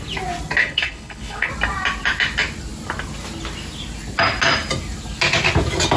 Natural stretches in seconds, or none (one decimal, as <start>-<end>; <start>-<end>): 0.0-0.6; 1.5-6.0